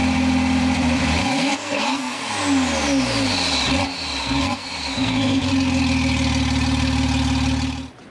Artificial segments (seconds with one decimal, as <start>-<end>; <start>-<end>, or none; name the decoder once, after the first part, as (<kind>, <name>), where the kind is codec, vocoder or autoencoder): 1.2-2.3 (codec, SNAC); 4.2-5.5